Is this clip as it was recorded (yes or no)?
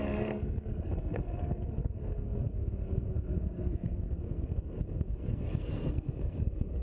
no